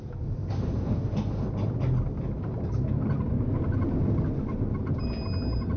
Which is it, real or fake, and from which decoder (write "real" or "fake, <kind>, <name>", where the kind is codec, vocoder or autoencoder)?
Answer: real